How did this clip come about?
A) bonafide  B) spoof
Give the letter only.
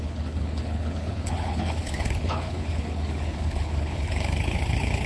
B